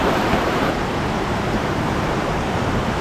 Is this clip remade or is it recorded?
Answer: remade